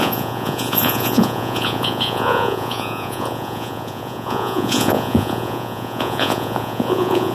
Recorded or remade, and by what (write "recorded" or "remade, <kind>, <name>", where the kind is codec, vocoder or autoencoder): remade, vocoder, Vocos